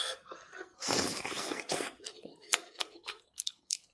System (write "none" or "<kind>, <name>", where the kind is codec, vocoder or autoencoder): codec, SNAC